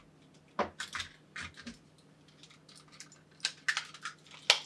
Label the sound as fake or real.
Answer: real